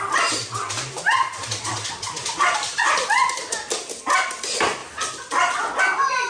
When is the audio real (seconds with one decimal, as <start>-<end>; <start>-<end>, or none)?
0.0-6.3